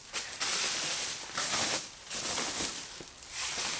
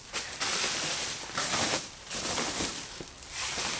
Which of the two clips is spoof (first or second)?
second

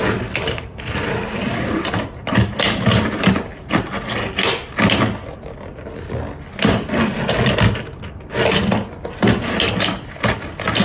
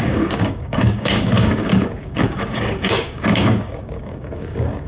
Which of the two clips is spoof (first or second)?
second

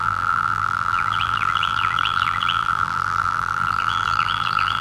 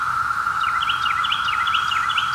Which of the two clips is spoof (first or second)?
first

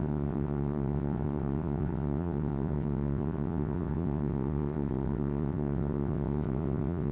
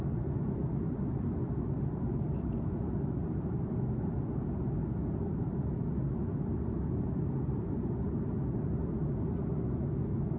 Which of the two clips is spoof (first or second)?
first